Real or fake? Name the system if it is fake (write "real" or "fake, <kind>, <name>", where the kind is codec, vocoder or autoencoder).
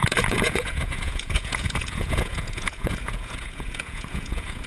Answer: fake, vocoder, Vocos